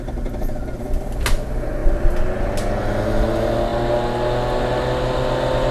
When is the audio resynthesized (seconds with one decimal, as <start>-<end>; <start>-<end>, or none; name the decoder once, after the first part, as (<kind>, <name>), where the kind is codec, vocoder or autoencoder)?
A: none